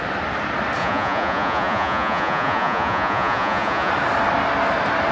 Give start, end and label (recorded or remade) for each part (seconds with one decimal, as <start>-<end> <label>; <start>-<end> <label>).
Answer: 0.0-0.8 recorded; 0.8-3.9 remade; 3.9-5.1 recorded